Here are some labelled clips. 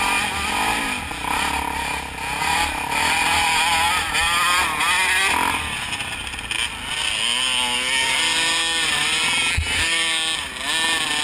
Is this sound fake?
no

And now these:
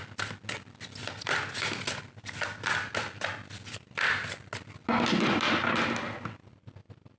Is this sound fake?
no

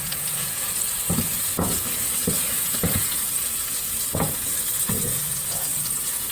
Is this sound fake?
yes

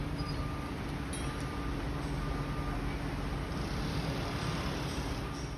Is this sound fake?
no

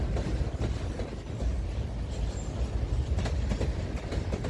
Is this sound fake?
no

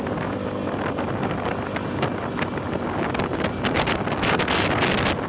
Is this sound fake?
no